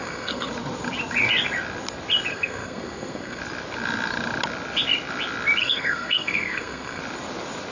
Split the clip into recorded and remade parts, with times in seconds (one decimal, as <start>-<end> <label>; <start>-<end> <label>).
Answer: 0.0-0.5 remade; 0.5-2.3 recorded; 2.3-3.4 remade; 3.4-5.6 recorded; 5.6-7.0 remade; 7.0-7.7 recorded